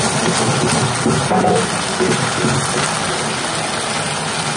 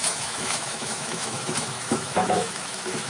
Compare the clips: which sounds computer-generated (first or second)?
second